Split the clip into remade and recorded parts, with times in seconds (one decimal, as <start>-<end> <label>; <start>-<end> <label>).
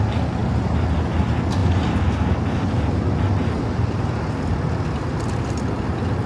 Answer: 0.0-6.3 recorded